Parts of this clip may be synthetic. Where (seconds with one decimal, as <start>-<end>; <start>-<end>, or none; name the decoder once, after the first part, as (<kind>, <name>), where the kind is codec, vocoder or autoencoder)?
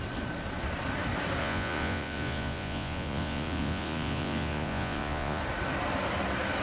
1.4-5.4 (vocoder, Vocos)